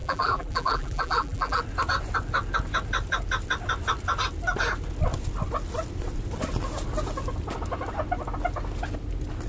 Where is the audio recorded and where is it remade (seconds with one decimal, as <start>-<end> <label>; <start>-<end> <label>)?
0.0-1.6 remade; 1.6-9.5 recorded